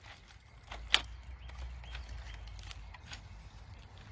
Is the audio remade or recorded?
recorded